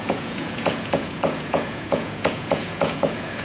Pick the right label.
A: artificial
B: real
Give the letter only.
A